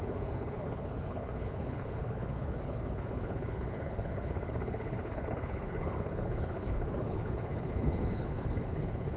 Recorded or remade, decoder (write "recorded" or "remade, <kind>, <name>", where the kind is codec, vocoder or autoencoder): remade, codec, HILCodec